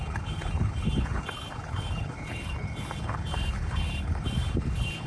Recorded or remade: remade